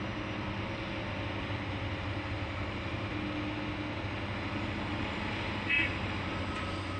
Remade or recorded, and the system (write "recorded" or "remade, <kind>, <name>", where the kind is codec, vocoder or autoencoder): recorded